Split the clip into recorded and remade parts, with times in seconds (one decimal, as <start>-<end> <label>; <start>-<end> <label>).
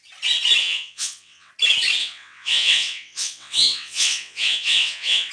0.0-0.6 recorded; 0.6-1.5 remade; 1.5-2.0 recorded; 2.0-5.3 remade